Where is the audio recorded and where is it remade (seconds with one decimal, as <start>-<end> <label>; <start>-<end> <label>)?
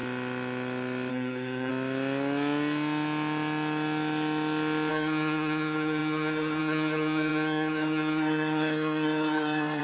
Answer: 0.0-1.1 recorded; 1.1-1.7 remade; 1.7-4.9 recorded; 4.9-9.8 remade